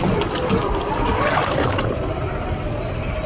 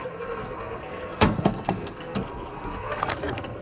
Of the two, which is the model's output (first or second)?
second